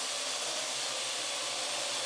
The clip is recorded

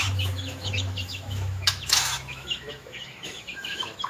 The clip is remade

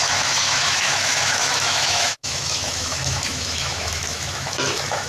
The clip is remade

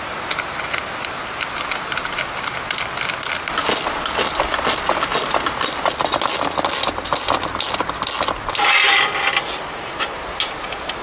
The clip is recorded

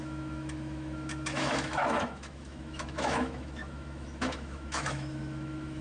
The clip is remade